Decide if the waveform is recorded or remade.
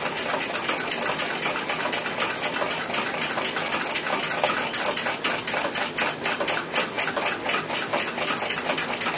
recorded